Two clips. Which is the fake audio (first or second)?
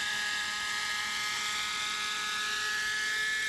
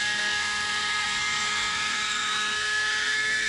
second